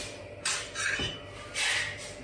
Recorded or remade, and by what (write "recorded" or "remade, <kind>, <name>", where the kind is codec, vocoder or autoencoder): recorded